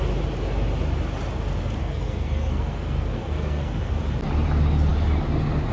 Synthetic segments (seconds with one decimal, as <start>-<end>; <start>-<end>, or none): 1.8-3.9